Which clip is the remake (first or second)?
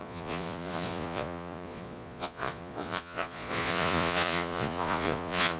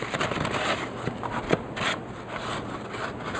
first